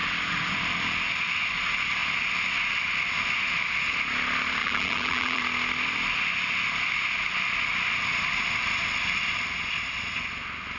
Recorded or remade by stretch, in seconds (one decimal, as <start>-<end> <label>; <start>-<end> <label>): 0.0-4.6 recorded; 4.6-5.4 remade; 5.4-10.8 recorded